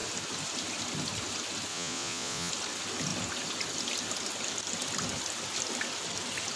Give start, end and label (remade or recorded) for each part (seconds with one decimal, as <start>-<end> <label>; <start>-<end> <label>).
0.0-1.7 recorded; 1.7-2.5 remade; 2.5-6.6 recorded